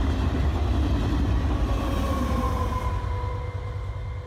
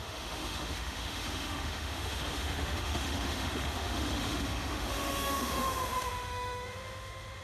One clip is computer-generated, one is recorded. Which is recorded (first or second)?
first